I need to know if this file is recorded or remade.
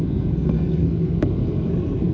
remade